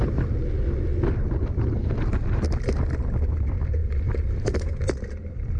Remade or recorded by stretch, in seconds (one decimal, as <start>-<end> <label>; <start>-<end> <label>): 0.0-3.8 recorded; 3.8-5.6 remade